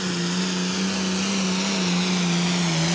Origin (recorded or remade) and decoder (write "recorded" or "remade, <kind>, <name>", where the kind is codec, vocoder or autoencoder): recorded